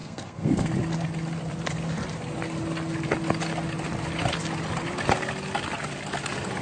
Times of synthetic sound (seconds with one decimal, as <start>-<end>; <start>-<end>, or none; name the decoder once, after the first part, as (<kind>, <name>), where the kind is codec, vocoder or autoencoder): 0.0-0.7 (codec, SNAC)